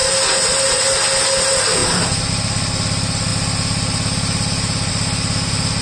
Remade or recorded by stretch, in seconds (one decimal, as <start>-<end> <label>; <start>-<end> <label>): 0.0-1.8 recorded; 1.8-2.3 remade; 2.3-5.8 recorded